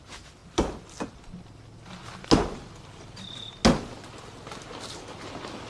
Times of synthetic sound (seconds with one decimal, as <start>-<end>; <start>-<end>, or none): 0.0-0.4; 2.7-3.6; 4.8-5.7